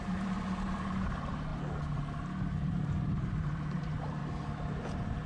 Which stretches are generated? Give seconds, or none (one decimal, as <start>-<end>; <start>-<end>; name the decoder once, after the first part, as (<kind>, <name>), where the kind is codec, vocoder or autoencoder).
0.0-1.5 (vocoder, BigVGAN v2); 2.7-4.2; 4.8-5.3